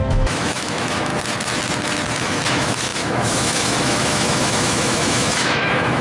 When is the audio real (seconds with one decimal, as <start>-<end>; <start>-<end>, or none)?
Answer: 1.1-2.5